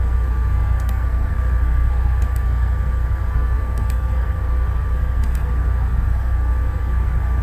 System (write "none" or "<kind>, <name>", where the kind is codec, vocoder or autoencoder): codec, SNAC